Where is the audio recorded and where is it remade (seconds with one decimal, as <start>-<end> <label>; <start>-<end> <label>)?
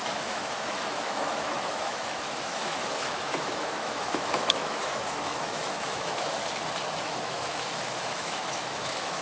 0.0-6.4 remade; 6.4-7.0 recorded; 7.0-9.2 remade